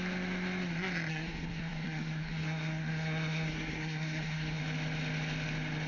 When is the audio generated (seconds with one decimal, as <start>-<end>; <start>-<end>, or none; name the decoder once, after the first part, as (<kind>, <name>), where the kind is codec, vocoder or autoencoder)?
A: 1.1-4.6 (codec, SNAC)